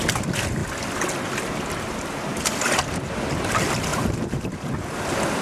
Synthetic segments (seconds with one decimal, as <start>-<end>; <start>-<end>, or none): 3.9-4.7